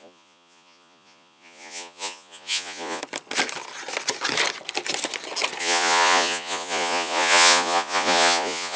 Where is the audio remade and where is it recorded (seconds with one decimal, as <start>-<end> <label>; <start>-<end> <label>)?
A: 0.0-3.0 remade; 3.0-5.6 recorded; 5.6-8.8 remade